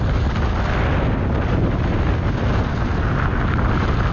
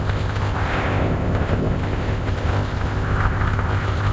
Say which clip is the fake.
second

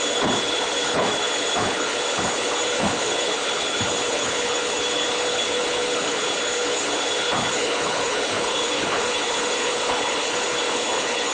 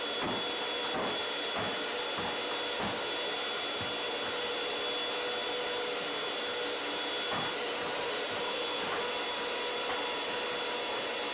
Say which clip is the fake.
first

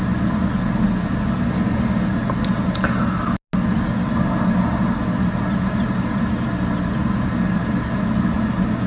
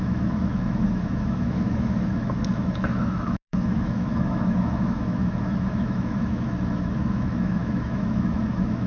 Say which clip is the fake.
second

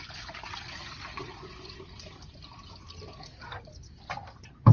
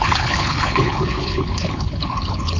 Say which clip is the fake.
second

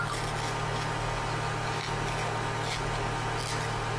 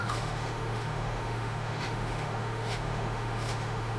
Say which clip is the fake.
second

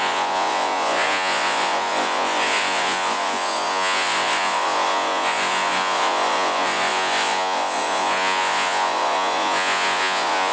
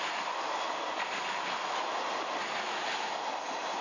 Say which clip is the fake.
first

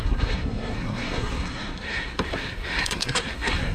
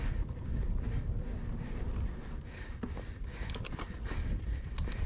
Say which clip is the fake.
first